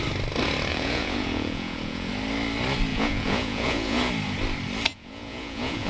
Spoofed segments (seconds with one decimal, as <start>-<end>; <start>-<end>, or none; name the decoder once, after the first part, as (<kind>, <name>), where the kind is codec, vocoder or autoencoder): 0.7-2.1 (vocoder, Vocos); 2.9-4.1; 4.9-5.9